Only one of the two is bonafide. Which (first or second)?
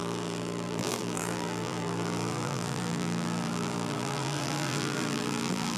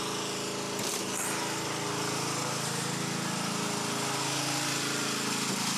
second